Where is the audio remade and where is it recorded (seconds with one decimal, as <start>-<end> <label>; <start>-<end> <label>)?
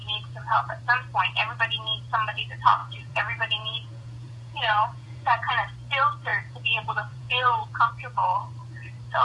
0.0-0.8 remade; 0.8-2.8 recorded; 2.8-5.5 remade; 5.5-6.3 recorded; 6.3-7.9 remade; 7.9-9.2 recorded